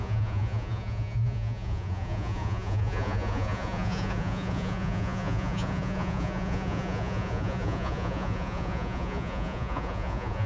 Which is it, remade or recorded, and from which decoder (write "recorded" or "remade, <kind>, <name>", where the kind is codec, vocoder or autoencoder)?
remade, vocoder, Vocos